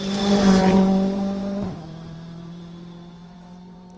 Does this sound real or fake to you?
fake